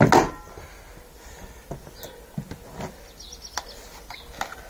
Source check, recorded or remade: recorded